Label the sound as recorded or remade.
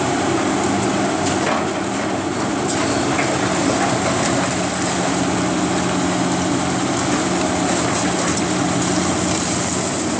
recorded